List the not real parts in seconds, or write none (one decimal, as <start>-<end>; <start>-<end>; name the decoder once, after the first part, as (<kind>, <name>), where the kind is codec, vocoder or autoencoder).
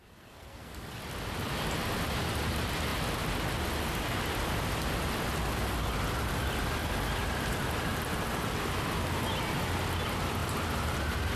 0.0-1.0 (codec, SNAC)